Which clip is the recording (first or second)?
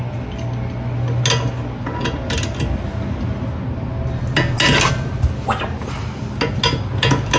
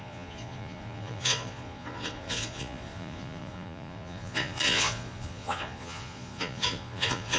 first